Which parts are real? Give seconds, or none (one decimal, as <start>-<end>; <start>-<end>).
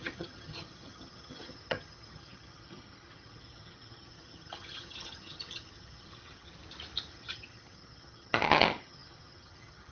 6.5-7.1